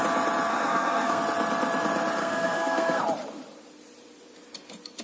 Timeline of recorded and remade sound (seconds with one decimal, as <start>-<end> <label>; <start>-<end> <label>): 0.0-0.5 recorded; 0.5-1.2 remade; 1.2-2.2 recorded; 2.2-3.0 remade; 3.0-5.0 recorded